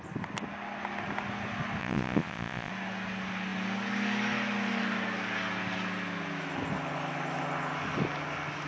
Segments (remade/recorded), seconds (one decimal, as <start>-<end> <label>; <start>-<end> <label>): 0.0-1.8 recorded; 1.8-2.7 remade; 2.7-8.7 recorded